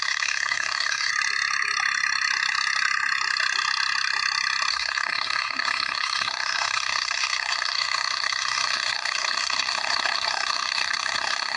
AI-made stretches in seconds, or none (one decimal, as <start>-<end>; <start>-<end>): 0.0-1.1; 4.7-11.6